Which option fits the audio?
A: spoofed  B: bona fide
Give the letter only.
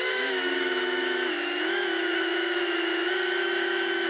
A